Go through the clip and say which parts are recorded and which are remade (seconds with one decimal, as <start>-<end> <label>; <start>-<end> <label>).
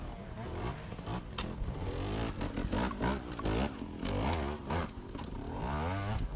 0.0-4.6 recorded; 4.6-5.6 remade; 5.6-6.4 recorded